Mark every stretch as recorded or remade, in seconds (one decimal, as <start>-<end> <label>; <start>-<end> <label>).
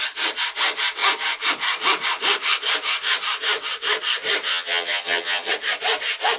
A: 0.0-4.5 recorded; 4.5-5.5 remade; 5.5-6.4 recorded